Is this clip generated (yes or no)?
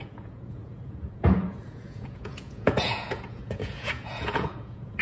yes